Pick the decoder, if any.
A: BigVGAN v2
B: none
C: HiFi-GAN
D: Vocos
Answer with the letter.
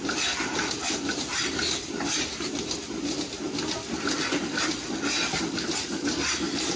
B